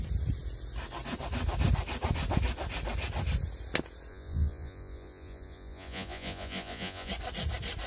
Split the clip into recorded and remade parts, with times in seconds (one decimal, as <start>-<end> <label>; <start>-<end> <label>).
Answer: 0.0-4.1 recorded; 4.1-7.1 remade; 7.1-7.9 recorded